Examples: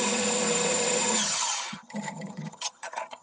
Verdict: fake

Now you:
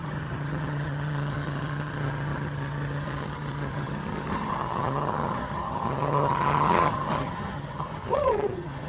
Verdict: fake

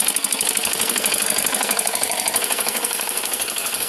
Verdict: fake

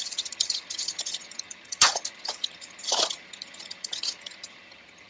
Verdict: fake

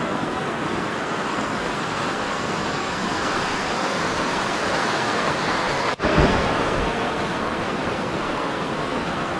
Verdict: fake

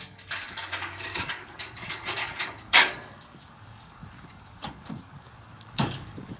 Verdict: fake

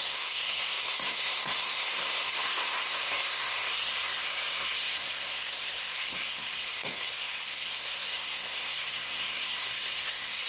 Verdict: fake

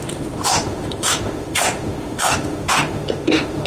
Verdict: fake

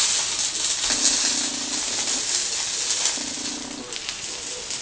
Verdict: real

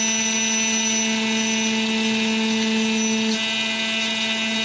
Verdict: real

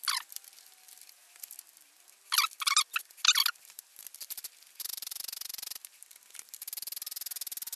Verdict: real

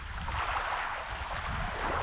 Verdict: real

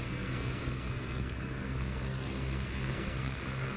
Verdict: fake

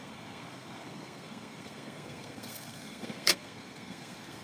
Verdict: fake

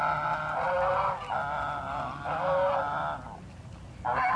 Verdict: real